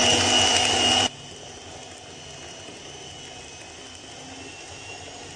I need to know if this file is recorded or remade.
recorded